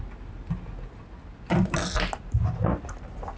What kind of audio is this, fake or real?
real